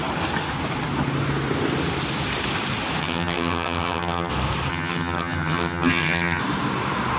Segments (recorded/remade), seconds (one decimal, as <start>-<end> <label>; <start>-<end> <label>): 0.0-3.0 recorded; 3.0-4.3 remade; 4.3-4.7 recorded; 4.7-6.4 remade; 6.4-7.2 recorded